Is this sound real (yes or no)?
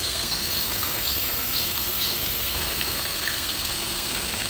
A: no